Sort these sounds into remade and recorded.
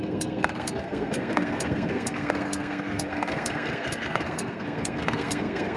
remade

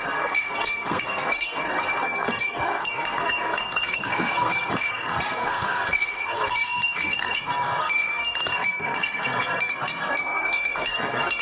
remade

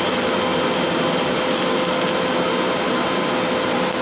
recorded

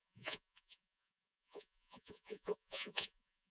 remade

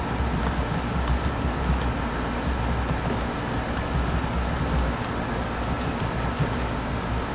recorded